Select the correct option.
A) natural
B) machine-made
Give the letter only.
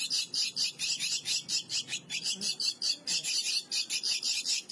A